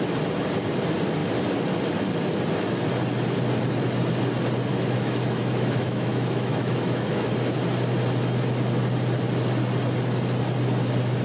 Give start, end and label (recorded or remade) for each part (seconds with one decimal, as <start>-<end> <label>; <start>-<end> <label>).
0.0-4.7 recorded; 4.7-7.3 remade; 7.3-11.2 recorded